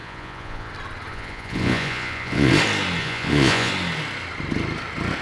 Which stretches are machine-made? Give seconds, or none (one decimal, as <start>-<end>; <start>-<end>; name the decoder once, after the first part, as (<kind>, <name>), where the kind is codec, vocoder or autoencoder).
0.0-0.7 (vocoder, Vocos); 1.1-2.5; 3.0-3.7